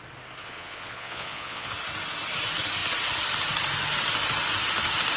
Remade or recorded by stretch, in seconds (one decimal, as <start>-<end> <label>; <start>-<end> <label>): 0.0-0.4 recorded; 0.4-1.7 remade; 1.7-5.2 recorded